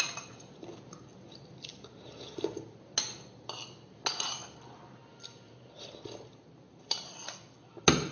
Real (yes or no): yes